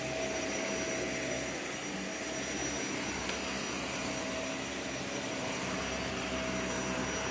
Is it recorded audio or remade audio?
recorded